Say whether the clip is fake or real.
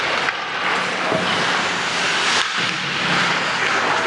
real